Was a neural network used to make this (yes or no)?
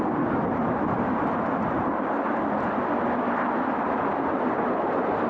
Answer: no